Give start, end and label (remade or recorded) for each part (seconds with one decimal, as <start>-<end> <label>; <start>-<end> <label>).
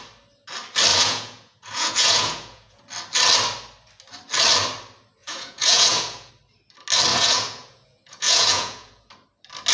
0.0-0.9 recorded; 0.9-2.8 remade; 2.8-5.2 recorded; 5.2-6.3 remade; 6.3-7.1 recorded; 7.1-9.1 remade; 9.1-9.7 recorded